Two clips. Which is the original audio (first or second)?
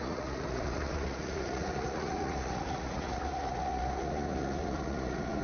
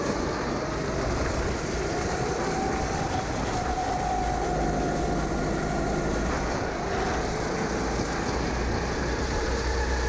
second